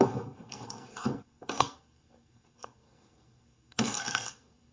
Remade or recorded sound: remade